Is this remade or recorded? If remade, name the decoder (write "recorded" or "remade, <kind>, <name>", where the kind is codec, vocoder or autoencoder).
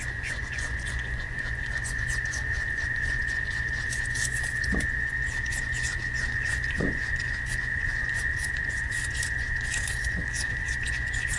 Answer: remade, vocoder, Vocos